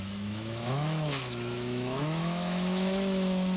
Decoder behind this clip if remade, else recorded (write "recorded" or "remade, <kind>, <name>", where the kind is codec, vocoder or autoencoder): remade, autoencoder, DAC-VAE